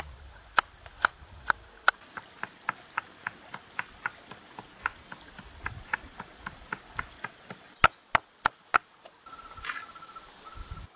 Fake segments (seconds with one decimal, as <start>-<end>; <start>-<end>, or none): 1.1-3.6